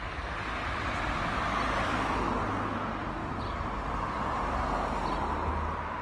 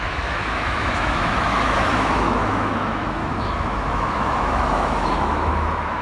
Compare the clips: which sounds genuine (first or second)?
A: first